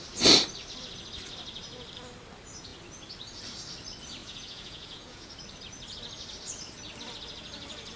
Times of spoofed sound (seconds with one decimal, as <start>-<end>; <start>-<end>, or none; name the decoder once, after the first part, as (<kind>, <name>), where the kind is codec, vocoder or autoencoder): 4.2-5.3 (vocoder, Vocos)